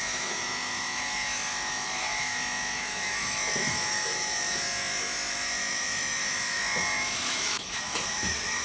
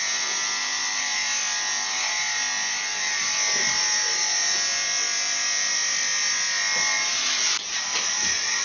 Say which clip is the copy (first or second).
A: first